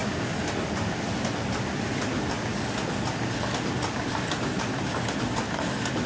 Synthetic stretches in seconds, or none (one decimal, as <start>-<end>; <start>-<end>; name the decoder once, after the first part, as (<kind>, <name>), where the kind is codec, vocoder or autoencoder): none